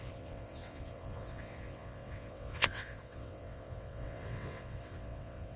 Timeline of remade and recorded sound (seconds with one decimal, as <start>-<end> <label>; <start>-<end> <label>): 0.0-5.6 remade